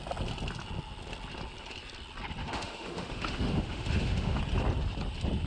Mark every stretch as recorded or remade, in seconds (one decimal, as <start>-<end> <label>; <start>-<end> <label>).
0.0-2.4 recorded; 2.4-4.4 remade; 4.4-5.5 recorded